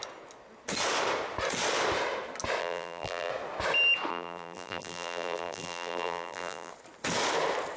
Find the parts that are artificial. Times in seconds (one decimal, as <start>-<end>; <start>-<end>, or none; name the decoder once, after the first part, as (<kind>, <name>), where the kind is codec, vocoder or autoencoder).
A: 2.6-3.3 (vocoder, BigVGAN v2); 4.1-6.7